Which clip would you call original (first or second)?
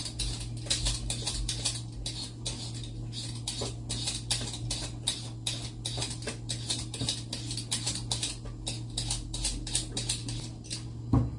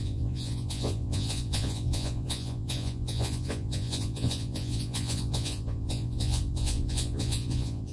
first